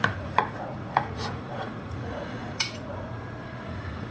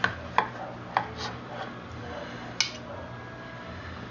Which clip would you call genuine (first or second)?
second